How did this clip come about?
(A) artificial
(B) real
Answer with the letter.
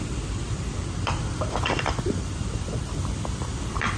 A